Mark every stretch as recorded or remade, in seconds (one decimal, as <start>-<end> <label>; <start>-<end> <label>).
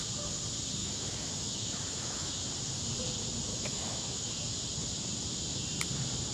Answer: 0.0-0.8 recorded; 0.8-2.3 remade; 2.3-3.5 recorded; 3.5-4.3 remade; 4.3-6.3 recorded